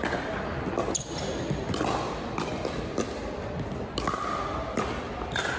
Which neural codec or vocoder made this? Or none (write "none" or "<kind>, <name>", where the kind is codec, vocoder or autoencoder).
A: none